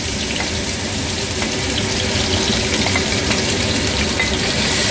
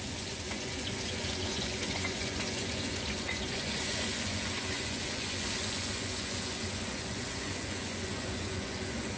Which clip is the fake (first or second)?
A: second